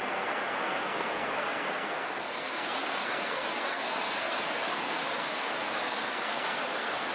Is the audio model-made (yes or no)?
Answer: yes